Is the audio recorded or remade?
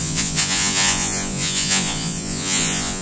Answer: remade